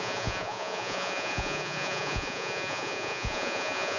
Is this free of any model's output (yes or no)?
no